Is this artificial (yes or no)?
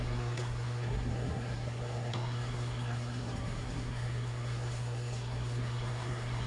yes